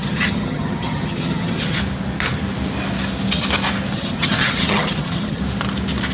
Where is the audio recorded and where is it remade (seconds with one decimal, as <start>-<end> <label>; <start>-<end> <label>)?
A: 0.0-1.8 remade; 1.8-3.9 recorded; 3.9-5.4 remade; 5.4-6.1 recorded